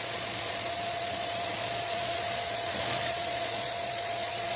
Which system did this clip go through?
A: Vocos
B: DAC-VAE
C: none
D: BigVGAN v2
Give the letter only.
A